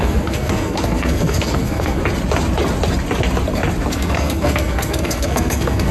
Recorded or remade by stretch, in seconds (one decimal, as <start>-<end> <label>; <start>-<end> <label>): 0.0-2.0 remade; 2.0-3.9 recorded; 3.9-5.9 remade